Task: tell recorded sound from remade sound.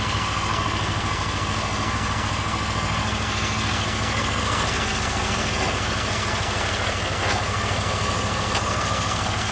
remade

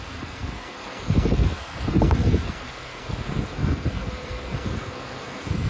remade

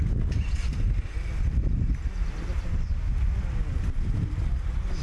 recorded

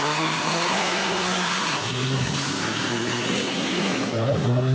remade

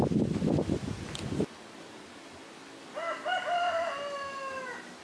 recorded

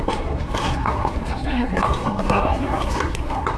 remade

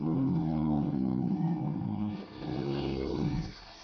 remade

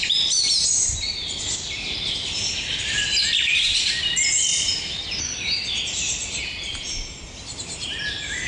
recorded